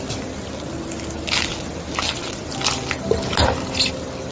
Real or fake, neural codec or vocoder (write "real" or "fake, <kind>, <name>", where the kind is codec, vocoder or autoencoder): real